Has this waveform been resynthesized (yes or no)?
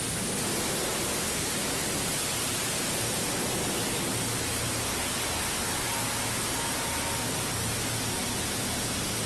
no